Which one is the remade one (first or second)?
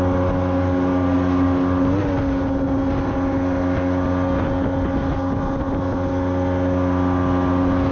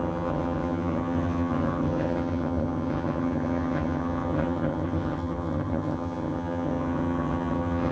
second